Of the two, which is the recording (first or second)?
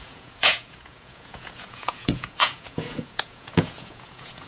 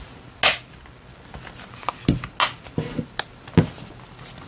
second